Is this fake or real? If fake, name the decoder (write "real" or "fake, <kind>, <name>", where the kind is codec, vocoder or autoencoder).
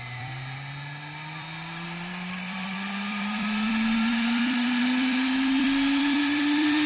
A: fake, vocoder, BigVGAN v2